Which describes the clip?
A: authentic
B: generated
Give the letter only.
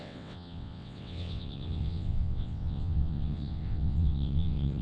B